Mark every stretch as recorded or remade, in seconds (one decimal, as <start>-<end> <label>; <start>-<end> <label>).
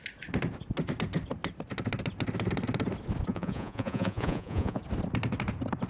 0.0-3.3 recorded; 3.3-4.8 remade; 4.8-5.9 recorded